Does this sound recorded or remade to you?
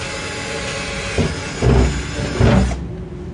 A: recorded